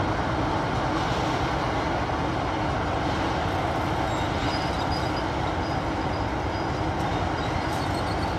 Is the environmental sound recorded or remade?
recorded